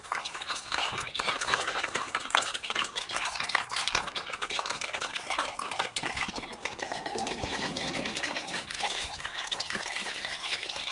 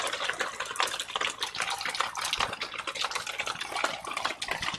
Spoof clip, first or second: first